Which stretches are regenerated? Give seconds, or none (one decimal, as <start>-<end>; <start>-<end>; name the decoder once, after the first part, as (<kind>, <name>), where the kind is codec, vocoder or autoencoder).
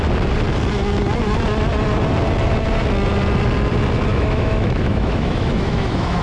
4.1-6.2 (autoencoder, DAC-VAE)